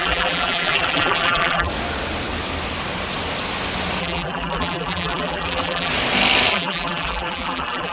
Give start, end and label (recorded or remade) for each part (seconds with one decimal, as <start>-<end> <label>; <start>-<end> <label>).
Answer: 0.0-1.7 remade; 1.7-4.0 recorded; 4.0-5.9 remade; 5.9-6.5 recorded; 6.5-7.9 remade